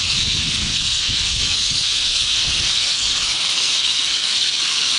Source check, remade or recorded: remade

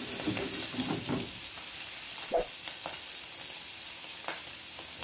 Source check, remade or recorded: recorded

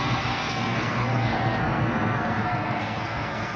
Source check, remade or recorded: remade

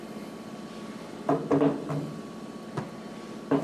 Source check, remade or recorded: recorded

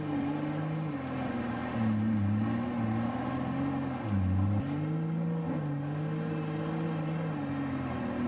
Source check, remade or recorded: recorded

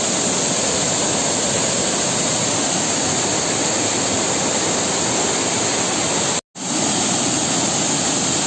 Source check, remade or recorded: recorded